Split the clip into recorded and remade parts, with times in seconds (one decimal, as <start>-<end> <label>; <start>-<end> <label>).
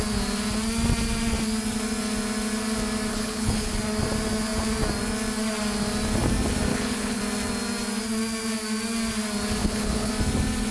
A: 0.0-3.1 recorded; 3.1-3.7 remade; 3.7-6.7 recorded; 6.7-7.2 remade; 7.2-9.6 recorded; 9.6-10.1 remade; 10.1-10.7 recorded